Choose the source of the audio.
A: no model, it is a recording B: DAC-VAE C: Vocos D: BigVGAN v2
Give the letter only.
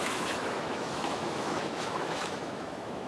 B